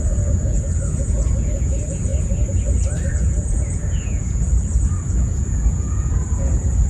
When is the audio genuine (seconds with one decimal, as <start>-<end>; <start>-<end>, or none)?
2.1-3.1; 4.5-5.2